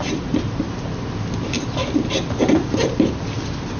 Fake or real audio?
real